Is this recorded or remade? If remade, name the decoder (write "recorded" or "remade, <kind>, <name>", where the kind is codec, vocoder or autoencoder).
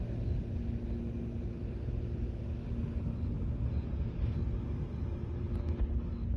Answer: recorded